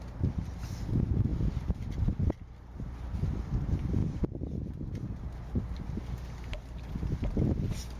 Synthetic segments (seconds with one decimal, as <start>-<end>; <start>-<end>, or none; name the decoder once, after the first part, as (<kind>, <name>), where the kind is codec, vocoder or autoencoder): none